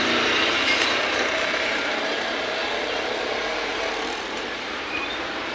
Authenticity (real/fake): fake